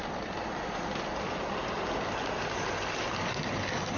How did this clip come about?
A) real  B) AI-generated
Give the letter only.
A